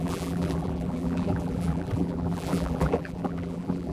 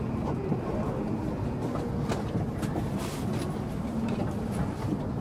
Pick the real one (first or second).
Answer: second